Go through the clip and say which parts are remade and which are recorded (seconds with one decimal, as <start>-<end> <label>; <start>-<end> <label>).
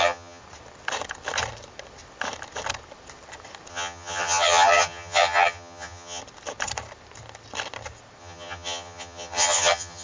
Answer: 0.0-0.4 remade; 0.4-3.7 recorded; 3.7-6.2 remade; 6.2-8.2 recorded; 8.2-10.0 remade